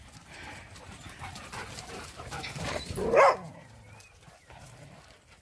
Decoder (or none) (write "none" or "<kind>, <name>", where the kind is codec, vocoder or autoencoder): none